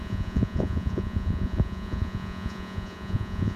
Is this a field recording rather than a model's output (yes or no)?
no